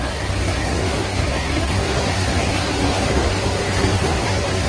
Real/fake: fake